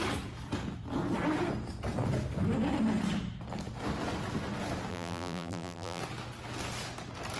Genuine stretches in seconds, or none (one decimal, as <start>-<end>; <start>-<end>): 0.0-4.9; 6.0-7.4